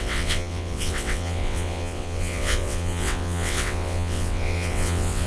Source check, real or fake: fake